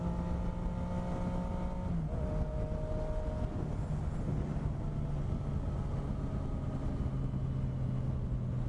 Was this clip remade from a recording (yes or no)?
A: no